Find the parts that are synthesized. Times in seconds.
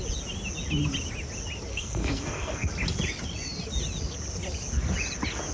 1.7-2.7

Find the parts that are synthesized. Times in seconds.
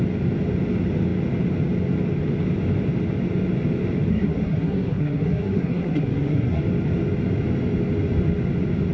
4.1-6.6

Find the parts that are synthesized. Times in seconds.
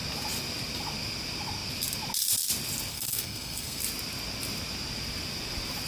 2.9-3.8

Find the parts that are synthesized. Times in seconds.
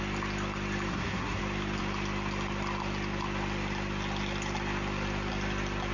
0.9-1.4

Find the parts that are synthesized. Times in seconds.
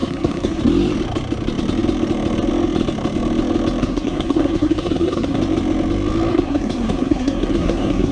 0.0-0.6; 3.8-5.4; 6.3-8.1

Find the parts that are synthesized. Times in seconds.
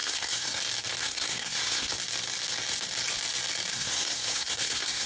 0.0-0.6; 1.0-1.9; 3.7-5.1